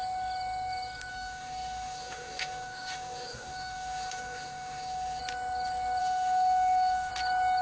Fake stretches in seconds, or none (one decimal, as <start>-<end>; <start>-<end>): 1.1-5.2; 6.0-7.1